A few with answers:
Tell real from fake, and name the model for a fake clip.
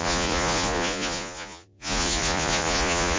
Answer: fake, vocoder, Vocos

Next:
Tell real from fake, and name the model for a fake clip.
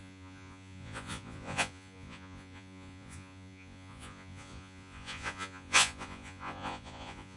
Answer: fake, vocoder, Vocos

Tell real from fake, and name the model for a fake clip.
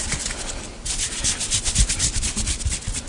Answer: real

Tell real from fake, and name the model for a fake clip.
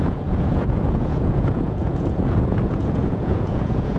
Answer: fake, vocoder, Vocos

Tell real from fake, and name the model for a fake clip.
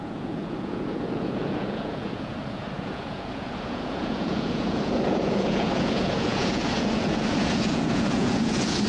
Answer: fake, vocoder, Vocos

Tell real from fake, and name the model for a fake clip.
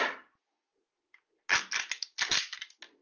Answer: real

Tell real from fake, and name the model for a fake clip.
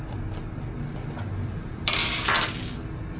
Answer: real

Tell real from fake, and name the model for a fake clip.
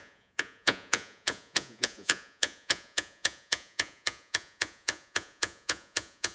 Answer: fake, vocoder, Vocos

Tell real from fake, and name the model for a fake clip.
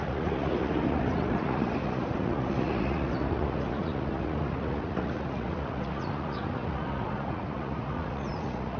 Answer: fake, vocoder, Vocos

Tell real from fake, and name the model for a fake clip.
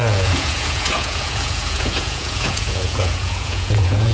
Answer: fake, vocoder, Vocos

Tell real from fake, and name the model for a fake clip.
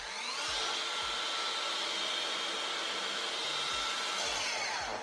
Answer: real